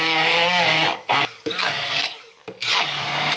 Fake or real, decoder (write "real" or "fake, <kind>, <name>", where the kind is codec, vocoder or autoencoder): fake, codec, DAC